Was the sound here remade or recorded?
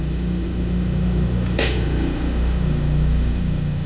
remade